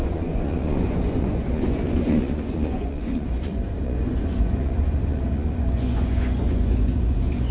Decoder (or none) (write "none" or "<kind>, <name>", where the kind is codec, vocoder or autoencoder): vocoder, Vocos